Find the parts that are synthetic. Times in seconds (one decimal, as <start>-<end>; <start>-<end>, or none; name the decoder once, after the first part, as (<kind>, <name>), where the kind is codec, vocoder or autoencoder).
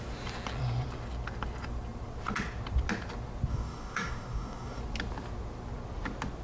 3.5-4.8 (codec, DAC)